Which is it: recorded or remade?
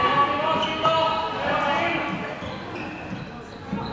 recorded